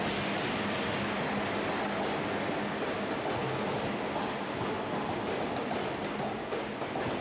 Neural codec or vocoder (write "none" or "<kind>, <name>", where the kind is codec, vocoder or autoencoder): none